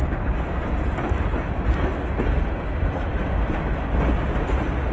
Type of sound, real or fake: real